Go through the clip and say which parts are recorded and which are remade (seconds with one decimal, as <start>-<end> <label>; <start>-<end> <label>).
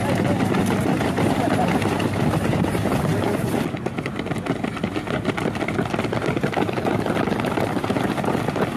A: 0.0-8.8 recorded